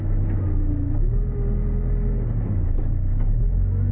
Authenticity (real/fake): real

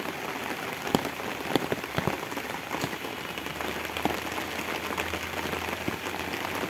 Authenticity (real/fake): real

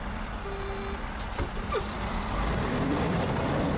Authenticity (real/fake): fake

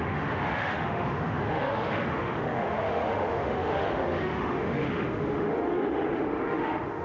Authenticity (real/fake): fake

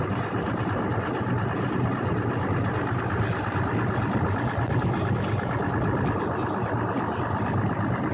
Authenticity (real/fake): real